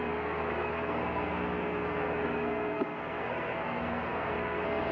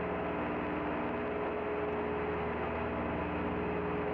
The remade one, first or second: first